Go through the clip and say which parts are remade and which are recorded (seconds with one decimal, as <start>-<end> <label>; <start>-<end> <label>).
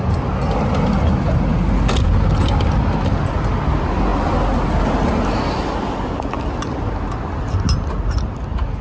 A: 0.0-8.8 recorded